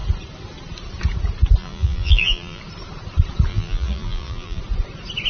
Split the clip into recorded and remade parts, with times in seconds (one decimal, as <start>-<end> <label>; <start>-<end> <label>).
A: 0.0-1.6 recorded; 1.6-2.6 remade; 2.6-3.5 recorded; 3.5-4.6 remade; 4.6-5.3 recorded